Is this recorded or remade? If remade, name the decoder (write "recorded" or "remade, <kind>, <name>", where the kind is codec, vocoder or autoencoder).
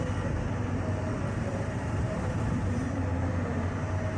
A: remade, vocoder, BigVGAN v2